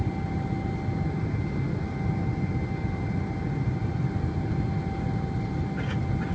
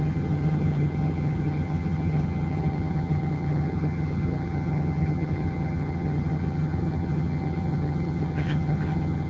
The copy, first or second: second